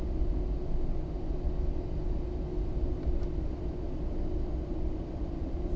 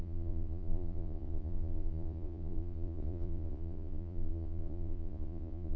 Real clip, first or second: first